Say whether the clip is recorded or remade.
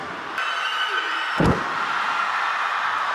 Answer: recorded